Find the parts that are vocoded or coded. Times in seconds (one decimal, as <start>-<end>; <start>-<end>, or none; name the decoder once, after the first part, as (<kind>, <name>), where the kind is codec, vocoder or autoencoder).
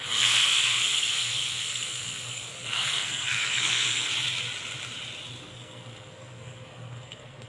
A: 0.0-4.1 (codec, SNAC); 5.4-7.5